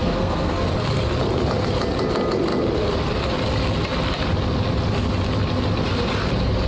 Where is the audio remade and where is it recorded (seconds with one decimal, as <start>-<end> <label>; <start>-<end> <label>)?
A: 0.0-0.7 remade; 0.7-6.7 recorded